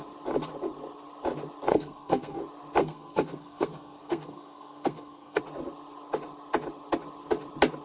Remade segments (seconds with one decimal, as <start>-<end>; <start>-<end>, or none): 1.7-2.4; 2.8-5.4

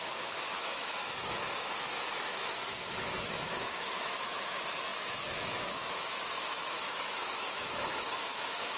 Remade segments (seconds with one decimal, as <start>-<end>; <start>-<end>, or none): 0.0-8.8

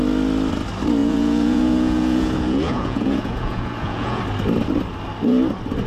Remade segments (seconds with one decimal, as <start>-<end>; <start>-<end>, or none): 1.0-4.2

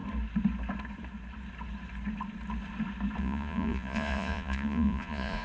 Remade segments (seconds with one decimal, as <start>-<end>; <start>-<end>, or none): 3.2-5.4

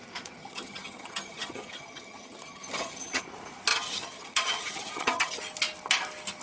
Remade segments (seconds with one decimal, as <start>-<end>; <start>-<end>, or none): 0.4-3.2; 3.7-5.4

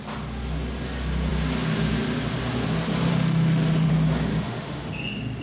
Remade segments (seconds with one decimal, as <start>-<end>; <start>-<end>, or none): 3.1-3.9; 4.3-4.9